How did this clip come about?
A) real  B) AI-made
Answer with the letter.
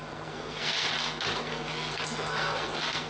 B